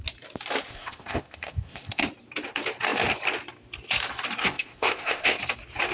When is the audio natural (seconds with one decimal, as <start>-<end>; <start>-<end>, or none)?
0.0-0.7; 2.0-4.4; 5.4-5.9